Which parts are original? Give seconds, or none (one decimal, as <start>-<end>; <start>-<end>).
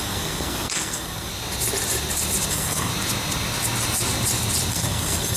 1.3-2.5; 2.9-4.7